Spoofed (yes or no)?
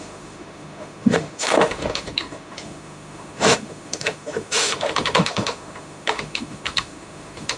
yes